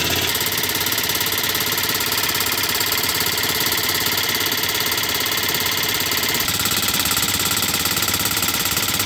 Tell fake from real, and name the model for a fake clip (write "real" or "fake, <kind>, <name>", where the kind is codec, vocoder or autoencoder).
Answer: fake, vocoder, BigVGAN v2